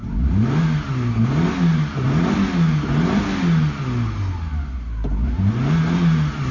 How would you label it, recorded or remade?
recorded